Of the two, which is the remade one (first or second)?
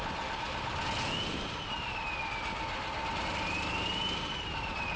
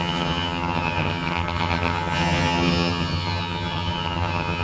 second